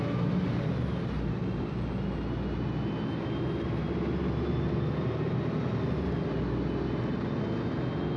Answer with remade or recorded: recorded